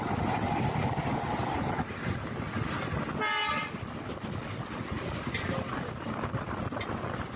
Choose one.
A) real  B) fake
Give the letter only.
A